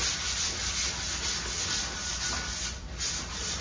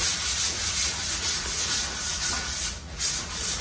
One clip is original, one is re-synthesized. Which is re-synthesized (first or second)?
second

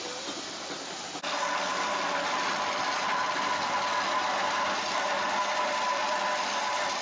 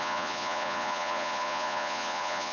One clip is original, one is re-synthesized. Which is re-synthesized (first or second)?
second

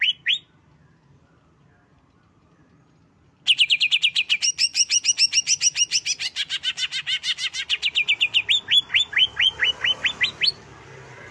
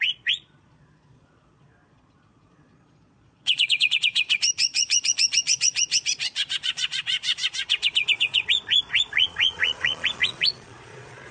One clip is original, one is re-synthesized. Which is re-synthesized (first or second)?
second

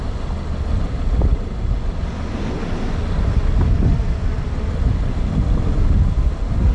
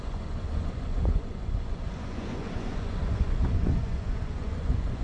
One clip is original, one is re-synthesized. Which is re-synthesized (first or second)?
second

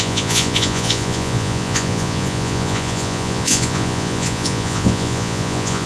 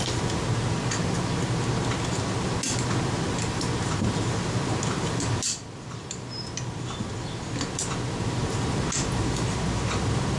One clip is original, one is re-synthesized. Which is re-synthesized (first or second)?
first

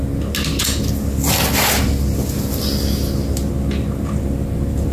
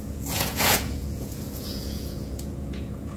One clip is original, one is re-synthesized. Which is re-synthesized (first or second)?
second